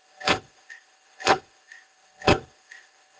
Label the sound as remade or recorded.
remade